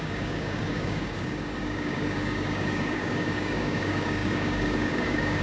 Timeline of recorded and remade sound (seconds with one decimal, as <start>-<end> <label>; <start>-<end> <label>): 0.0-5.4 remade